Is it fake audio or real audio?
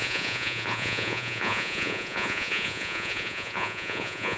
fake